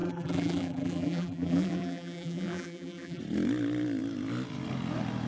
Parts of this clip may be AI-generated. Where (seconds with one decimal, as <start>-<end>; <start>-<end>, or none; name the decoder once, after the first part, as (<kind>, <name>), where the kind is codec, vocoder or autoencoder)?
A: 0.0-3.2 (vocoder, BigVGAN v2)